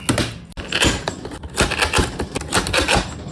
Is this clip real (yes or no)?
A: yes